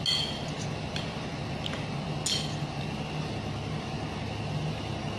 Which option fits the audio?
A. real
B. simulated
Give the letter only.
A